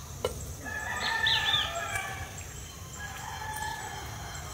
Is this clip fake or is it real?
real